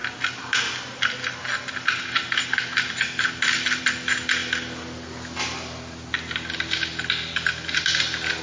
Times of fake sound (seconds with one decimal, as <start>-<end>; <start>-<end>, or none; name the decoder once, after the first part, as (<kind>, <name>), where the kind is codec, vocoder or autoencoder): none